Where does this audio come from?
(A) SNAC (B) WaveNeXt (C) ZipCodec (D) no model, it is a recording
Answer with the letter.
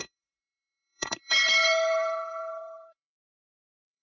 A